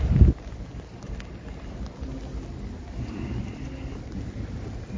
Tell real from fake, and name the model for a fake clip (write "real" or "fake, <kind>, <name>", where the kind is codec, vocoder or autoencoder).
real